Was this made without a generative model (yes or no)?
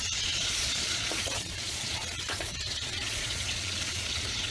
no